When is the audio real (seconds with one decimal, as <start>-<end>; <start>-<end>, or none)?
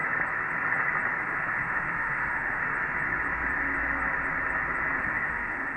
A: 0.0-1.2; 2.6-5.0